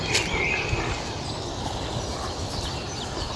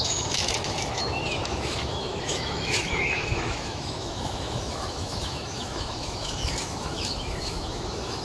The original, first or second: first